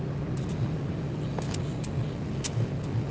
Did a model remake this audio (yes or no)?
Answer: no